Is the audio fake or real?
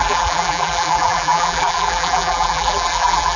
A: fake